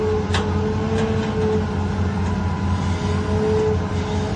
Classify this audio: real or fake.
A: real